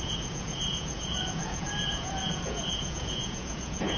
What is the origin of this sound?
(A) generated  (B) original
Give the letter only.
A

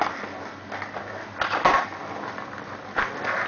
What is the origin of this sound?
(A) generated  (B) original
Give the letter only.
B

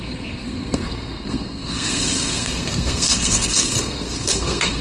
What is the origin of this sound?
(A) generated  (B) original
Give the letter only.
A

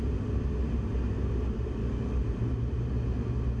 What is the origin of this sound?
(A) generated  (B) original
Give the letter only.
B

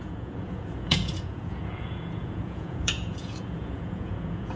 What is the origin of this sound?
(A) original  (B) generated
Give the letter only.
B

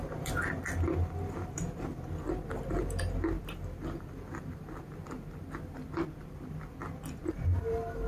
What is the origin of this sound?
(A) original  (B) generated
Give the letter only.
B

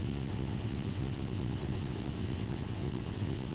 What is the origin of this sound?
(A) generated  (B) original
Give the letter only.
A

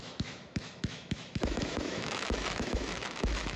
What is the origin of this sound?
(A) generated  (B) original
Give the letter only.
A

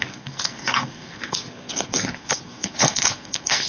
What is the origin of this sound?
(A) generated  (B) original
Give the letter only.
A